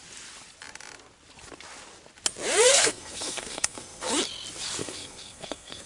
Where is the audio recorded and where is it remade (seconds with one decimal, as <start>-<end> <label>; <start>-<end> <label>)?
0.0-2.7 recorded; 2.7-4.1 remade; 4.1-4.8 recorded; 4.8-5.9 remade